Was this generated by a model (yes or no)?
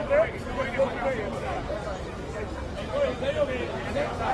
no